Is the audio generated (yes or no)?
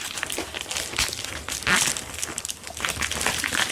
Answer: no